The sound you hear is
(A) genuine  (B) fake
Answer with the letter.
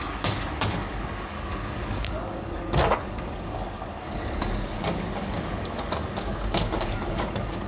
B